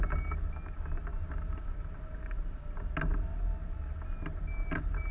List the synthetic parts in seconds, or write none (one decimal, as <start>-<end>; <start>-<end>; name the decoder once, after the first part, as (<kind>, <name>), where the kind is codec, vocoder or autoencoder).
none